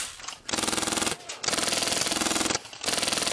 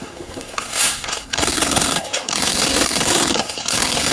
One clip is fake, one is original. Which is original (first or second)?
first